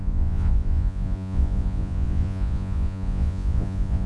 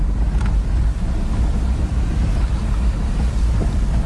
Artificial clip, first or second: first